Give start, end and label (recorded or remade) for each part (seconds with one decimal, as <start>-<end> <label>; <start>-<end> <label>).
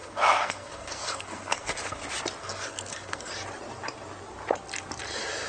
0.0-2.0 remade; 2.0-2.4 recorded; 2.4-3.3 remade; 3.3-5.5 recorded